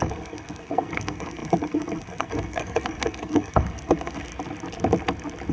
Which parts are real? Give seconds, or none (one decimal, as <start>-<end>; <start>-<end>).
4.3-5.5